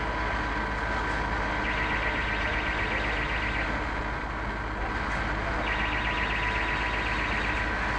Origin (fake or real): real